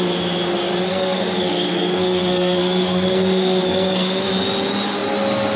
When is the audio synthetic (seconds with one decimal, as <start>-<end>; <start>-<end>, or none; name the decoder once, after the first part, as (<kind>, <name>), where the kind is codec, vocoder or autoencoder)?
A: 0.9-4.3 (codec, SNAC)